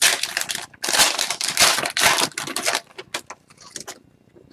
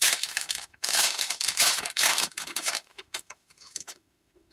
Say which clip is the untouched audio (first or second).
first